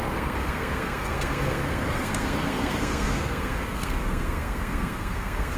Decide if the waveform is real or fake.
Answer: fake